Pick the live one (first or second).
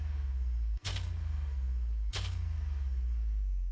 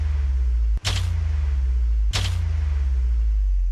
second